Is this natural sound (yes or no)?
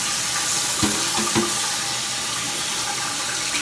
yes